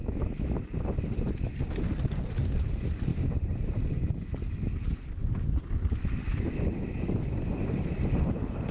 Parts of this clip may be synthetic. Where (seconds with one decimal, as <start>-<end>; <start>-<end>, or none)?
0.0-0.6